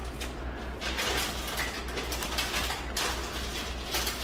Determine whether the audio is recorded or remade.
recorded